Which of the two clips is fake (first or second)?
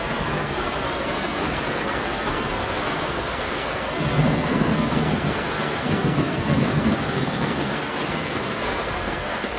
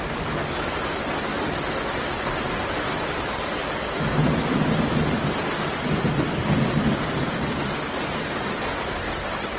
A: first